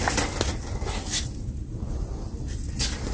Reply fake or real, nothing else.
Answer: real